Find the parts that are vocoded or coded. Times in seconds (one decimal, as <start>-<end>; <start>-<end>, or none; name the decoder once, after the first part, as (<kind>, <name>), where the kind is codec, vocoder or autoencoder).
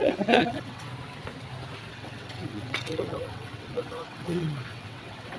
0.0-0.9 (vocoder, WaveNeXt); 1.9-5.4